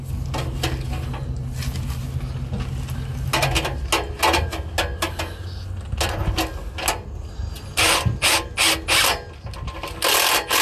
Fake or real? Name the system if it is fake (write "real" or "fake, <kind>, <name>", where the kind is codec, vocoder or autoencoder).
real